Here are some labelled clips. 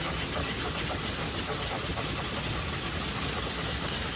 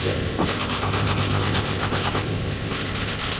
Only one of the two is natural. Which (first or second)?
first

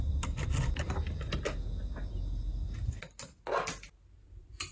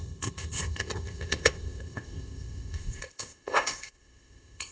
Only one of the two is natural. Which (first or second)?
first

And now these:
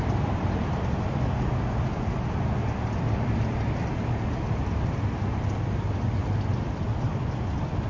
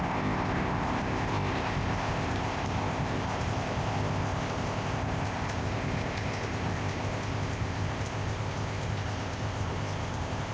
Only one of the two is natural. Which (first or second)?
first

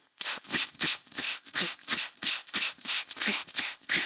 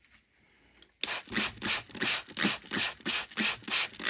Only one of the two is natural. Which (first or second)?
second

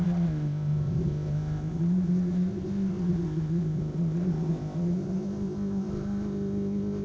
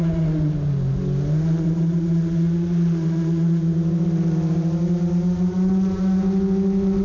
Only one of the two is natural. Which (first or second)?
second